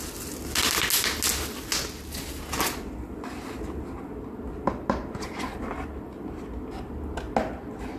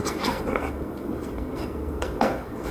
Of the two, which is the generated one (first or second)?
second